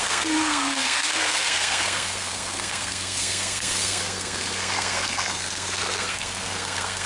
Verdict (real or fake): fake